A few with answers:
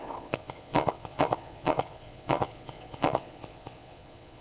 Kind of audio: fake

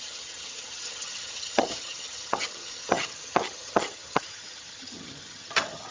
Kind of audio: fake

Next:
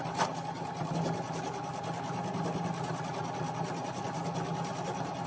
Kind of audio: real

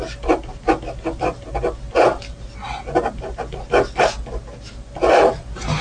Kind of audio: real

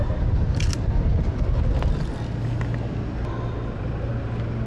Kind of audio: real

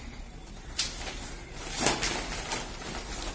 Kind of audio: real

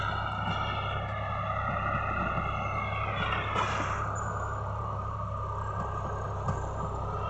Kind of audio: real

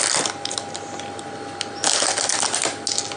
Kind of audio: real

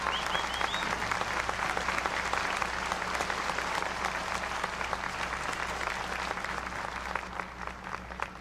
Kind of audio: real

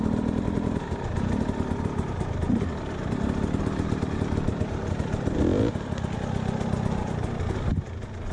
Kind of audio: fake